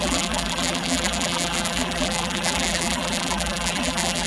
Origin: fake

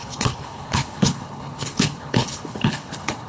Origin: fake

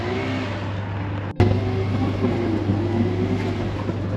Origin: real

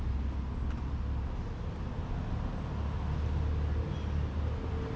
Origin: real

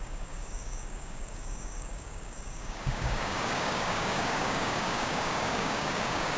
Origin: fake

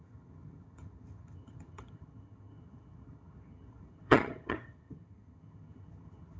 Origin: fake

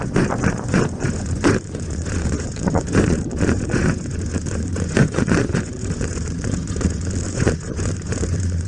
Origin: fake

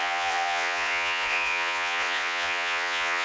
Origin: fake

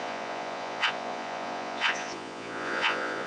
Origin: fake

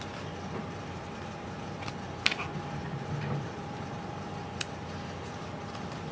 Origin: real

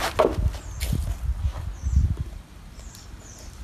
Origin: real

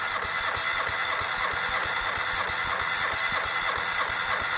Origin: real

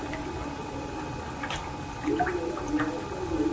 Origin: fake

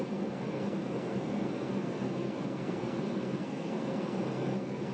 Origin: fake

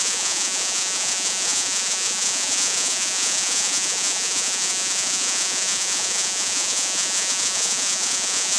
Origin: fake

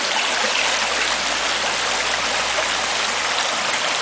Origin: real